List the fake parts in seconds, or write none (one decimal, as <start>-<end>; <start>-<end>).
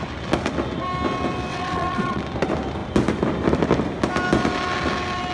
1.5-2.2